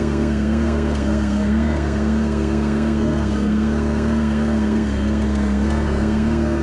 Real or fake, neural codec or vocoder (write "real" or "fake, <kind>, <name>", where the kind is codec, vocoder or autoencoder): fake, codec, SNAC